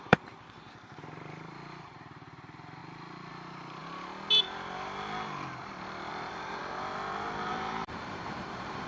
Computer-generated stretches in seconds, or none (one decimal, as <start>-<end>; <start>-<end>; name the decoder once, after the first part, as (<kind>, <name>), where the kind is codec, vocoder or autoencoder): 0.0-2.8 (vocoder, BigVGAN v2); 3.3-3.8; 6.1-6.6; 7.5-8.9